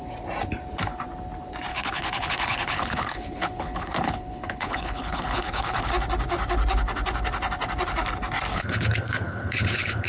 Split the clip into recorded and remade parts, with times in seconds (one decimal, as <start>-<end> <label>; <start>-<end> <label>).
0.0-1.7 recorded; 1.7-5.9 remade; 5.9-8.5 recorded; 8.5-10.1 remade